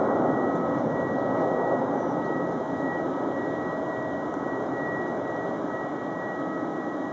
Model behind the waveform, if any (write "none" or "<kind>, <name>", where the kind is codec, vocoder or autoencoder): none